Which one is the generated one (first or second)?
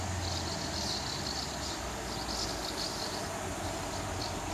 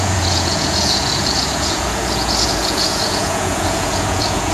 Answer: second